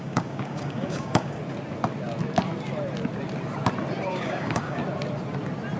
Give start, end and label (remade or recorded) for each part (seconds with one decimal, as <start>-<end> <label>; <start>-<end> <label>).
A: 0.0-1.4 remade; 1.4-4.1 recorded; 4.1-4.8 remade; 4.8-5.8 recorded